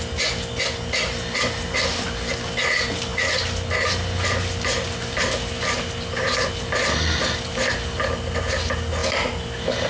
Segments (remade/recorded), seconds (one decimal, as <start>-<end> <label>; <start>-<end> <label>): 0.0-9.9 recorded